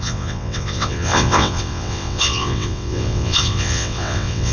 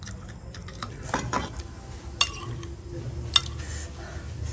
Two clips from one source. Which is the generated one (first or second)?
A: first